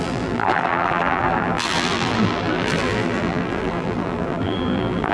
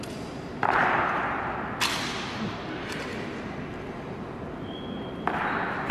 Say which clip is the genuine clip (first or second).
second